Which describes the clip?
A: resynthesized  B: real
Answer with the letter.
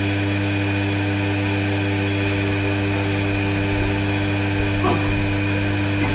B